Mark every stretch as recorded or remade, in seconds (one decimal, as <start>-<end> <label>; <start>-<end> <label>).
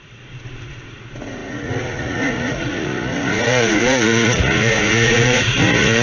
0.0-6.0 remade